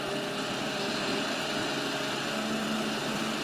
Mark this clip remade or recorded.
recorded